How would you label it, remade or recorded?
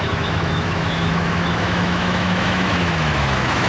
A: remade